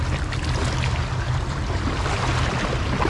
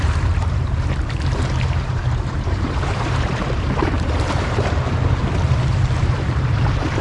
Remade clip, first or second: second